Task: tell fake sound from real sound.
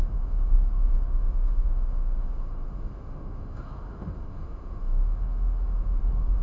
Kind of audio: fake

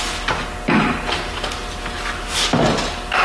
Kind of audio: real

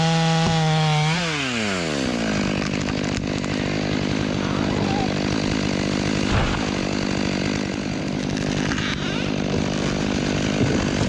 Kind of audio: real